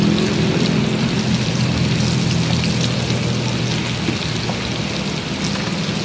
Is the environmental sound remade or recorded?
recorded